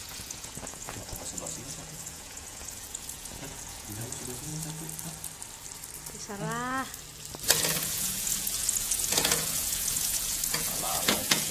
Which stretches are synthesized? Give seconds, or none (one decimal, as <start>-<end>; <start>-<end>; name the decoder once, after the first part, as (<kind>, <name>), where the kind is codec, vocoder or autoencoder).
0.0-4.5 (vocoder, Vocos); 7.6-11.5